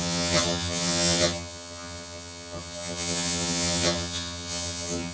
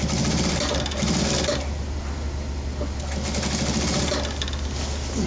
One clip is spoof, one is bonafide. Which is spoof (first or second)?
first